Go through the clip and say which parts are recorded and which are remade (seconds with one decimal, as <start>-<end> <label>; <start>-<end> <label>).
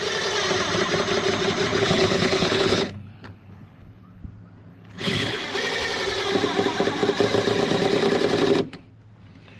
0.0-1.7 recorded; 1.7-4.2 remade; 4.2-4.7 recorded; 4.7-5.4 remade; 5.4-9.6 recorded